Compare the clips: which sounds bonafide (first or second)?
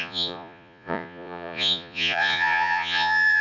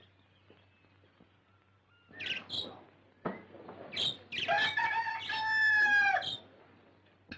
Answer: second